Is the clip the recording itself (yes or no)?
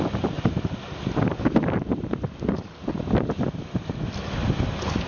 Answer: yes